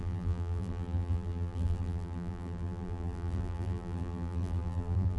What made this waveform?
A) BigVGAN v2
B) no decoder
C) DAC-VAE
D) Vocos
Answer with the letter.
A